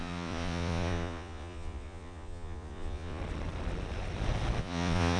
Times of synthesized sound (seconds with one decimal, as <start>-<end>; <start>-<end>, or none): 0.0-3.2; 4.6-5.2